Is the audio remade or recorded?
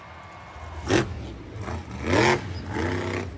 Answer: recorded